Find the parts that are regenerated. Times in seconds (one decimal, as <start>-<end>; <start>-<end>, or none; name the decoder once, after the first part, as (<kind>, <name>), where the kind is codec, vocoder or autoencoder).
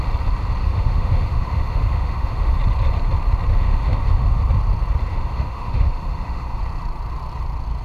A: 0.6-2.6 (autoencoder, DAC-VAE); 3.5-4.4; 5.1-6.6